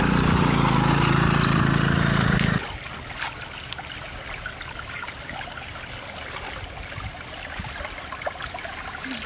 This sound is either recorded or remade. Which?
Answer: recorded